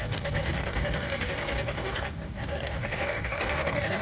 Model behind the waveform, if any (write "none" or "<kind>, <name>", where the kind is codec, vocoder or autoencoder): codec, DAC